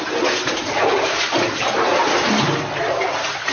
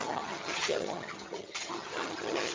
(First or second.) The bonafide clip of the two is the first